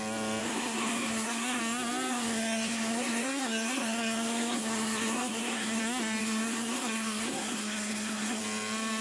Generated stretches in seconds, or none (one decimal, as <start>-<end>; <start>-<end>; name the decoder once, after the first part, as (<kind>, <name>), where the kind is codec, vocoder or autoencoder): 0.4-1.6 (codec, SNAC); 2.1-5.8; 6.2-8.4

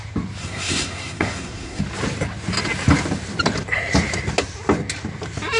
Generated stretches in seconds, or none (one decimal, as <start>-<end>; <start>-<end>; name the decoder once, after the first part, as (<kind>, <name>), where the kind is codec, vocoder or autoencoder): 0.4-1.8 (codec, SNAC)

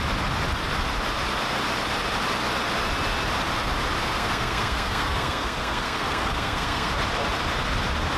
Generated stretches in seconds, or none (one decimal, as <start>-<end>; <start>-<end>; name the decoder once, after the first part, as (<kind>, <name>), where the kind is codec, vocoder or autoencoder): 4.0-6.9 (codec, SNAC)

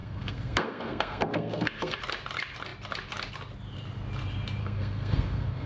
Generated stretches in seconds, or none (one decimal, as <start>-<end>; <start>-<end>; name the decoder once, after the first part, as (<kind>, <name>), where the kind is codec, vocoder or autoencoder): 0.0-2.0 (codec, SNAC); 4.6-5.7

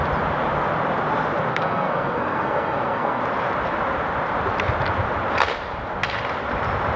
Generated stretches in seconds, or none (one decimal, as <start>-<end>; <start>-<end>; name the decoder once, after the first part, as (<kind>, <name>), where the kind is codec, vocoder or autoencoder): 1.5-3.2 (codec, SNAC)

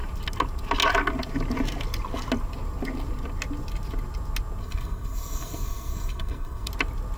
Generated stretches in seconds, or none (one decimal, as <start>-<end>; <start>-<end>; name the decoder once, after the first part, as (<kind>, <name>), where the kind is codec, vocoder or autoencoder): 4.6-6.7 (codec, SNAC)